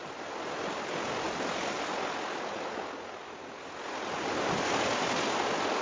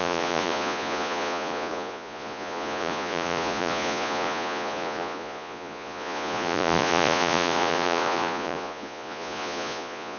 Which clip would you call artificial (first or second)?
second